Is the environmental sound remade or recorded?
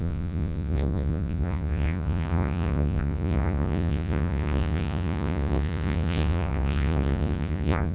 remade